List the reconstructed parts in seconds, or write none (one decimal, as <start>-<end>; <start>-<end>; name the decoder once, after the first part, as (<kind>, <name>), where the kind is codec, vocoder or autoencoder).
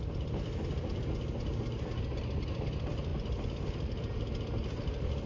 none